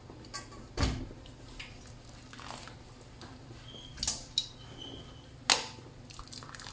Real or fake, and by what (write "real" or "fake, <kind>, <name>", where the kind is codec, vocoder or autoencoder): real